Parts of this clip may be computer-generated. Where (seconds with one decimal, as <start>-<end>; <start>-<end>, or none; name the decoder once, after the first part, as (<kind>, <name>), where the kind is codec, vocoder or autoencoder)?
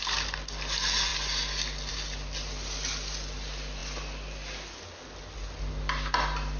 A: none